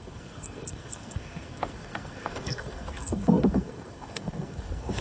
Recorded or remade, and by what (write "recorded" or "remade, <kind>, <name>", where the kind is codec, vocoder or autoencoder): remade, codec, SNAC